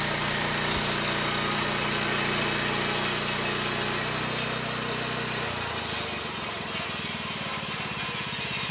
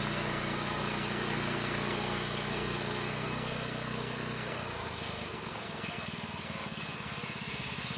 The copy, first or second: second